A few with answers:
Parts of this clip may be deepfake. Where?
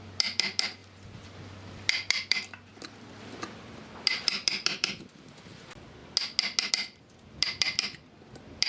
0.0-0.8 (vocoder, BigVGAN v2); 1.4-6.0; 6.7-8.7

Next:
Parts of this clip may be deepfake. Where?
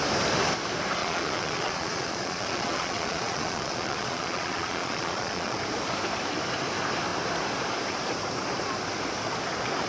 1.0-5.6 (vocoder, Vocos)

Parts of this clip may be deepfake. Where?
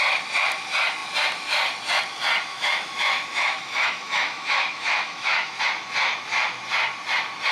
2.5-5.6 (autoencoder, DAC-VAE)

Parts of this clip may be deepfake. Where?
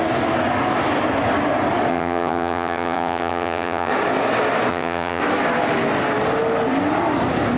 1.9-3.9 (vocoder, HiFi-GAN); 4.7-5.2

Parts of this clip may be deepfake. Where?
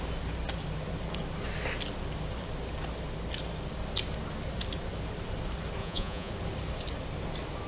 5.8-6.3 (vocoder, Vocos)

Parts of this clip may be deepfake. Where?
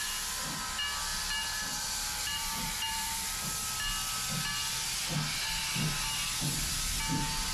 1.1-3.5 (vocoder, BigVGAN v2)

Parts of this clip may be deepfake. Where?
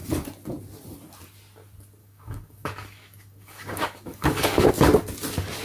2.0-4.7 (codec, DAC)